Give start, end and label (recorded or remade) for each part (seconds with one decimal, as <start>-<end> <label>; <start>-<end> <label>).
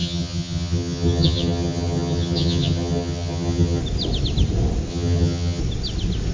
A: 0.0-3.8 remade; 3.8-4.9 recorded; 4.9-5.6 remade; 5.6-6.3 recorded